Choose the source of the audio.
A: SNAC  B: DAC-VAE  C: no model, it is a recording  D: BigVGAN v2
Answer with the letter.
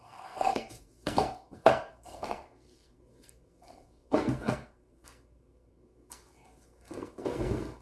A